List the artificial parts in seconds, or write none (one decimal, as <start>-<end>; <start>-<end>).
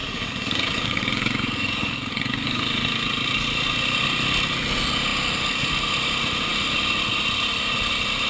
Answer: 0.0-2.6